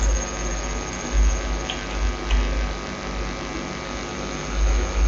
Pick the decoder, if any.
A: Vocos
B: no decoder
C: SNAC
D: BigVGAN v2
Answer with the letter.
B